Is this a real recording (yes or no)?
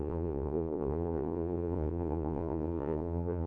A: no